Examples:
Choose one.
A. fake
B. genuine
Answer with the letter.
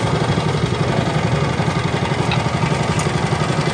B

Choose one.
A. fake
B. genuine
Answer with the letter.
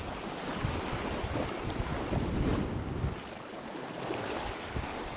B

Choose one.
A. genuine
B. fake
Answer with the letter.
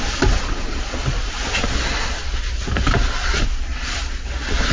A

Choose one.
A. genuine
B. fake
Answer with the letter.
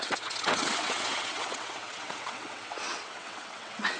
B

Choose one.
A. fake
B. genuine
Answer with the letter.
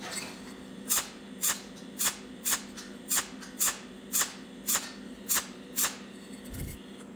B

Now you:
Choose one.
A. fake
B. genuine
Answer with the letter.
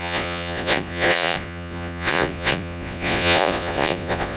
A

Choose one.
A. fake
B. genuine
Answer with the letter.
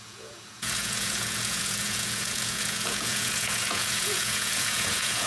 A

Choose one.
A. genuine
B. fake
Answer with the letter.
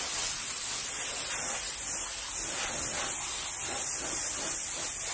A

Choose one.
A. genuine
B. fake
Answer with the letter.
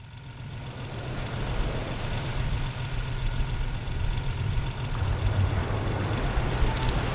A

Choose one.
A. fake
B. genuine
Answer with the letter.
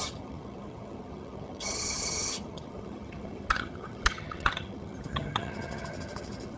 A